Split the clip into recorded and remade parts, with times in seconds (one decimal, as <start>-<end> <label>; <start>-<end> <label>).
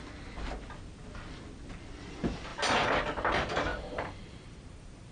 0.0-3.7 recorded; 3.7-5.1 remade